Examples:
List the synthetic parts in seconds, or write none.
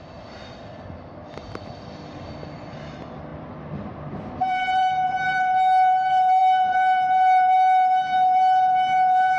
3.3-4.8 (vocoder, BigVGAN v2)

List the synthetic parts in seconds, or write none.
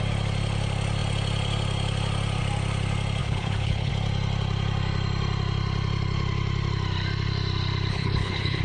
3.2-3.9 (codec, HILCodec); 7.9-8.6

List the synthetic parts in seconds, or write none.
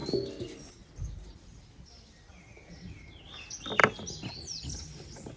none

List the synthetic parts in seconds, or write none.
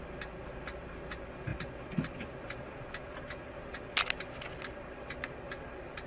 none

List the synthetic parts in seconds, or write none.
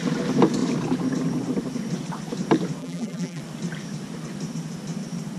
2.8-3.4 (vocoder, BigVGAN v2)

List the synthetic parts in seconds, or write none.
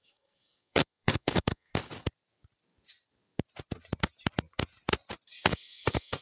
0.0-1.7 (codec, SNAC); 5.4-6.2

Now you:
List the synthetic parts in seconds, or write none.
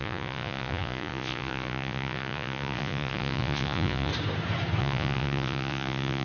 0.0-4.1 (vocoder, Vocos); 4.8-6.2